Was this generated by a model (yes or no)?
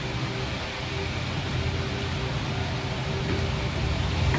no